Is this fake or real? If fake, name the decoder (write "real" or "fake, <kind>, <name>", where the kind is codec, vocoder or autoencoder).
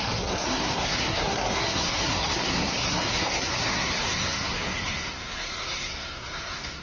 fake, codec, SNAC